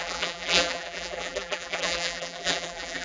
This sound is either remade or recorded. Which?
remade